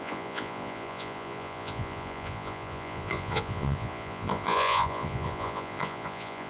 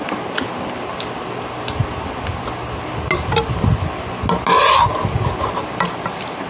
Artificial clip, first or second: first